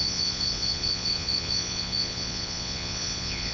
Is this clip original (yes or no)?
no